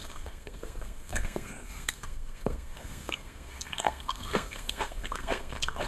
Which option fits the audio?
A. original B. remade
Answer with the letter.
B